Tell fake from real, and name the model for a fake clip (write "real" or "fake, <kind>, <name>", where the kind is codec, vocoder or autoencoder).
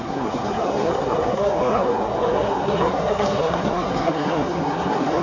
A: fake, codec, SNAC